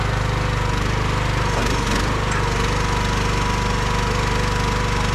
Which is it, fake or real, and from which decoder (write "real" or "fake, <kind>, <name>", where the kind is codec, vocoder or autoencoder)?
real